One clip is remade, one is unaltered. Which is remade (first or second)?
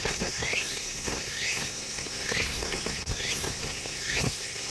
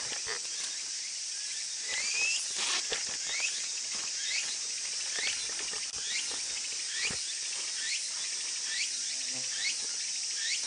first